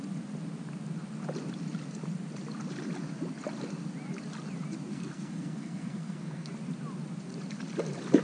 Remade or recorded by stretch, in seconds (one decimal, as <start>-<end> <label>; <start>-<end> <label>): 0.0-4.9 recorded; 4.9-6.5 remade; 6.5-8.2 recorded